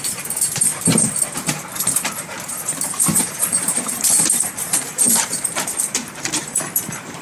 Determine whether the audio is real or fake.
fake